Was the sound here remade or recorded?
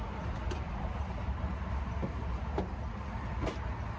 recorded